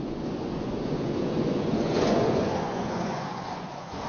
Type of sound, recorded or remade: remade